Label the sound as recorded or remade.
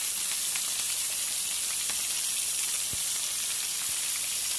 recorded